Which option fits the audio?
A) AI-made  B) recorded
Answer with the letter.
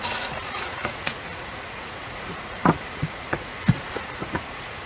A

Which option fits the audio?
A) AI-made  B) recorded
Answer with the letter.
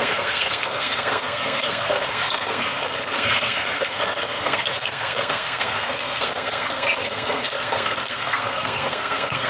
A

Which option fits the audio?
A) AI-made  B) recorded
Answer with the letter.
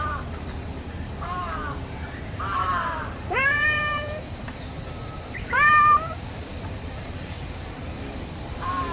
A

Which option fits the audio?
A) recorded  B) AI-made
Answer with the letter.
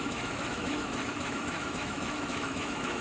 B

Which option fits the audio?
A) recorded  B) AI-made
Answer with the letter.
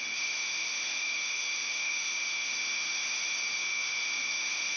B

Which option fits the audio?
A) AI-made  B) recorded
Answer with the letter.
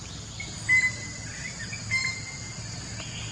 B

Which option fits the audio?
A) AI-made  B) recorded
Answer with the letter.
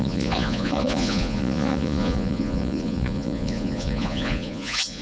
A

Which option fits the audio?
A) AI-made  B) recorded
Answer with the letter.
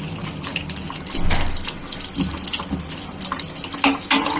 B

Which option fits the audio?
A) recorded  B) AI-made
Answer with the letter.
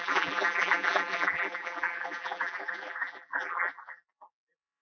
B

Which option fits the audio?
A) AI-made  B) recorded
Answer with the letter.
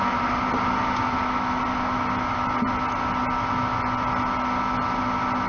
B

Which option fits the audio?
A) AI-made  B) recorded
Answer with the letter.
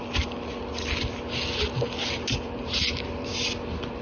B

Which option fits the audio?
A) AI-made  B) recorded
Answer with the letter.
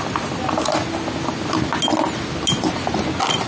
B